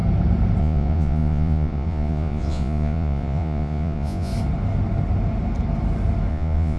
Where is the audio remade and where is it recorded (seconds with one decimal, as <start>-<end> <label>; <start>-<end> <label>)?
0.0-0.6 recorded; 0.6-4.3 remade; 4.3-6.3 recorded; 6.3-6.8 remade